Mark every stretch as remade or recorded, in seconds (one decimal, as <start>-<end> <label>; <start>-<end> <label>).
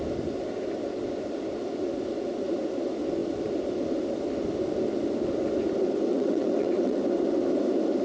0.0-6.1 recorded; 6.1-7.0 remade; 7.0-8.0 recorded